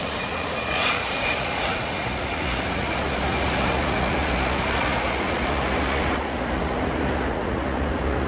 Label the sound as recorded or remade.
remade